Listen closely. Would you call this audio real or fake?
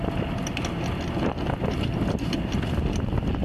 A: real